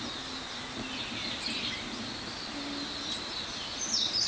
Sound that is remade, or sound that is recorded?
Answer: recorded